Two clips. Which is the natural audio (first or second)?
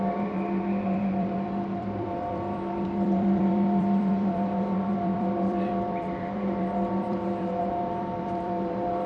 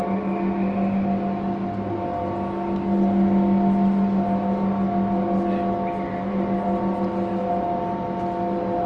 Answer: second